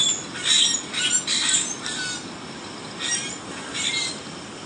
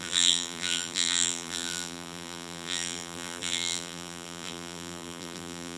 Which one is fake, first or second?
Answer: second